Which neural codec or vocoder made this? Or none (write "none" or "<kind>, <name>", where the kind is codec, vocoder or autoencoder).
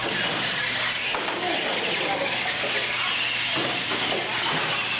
none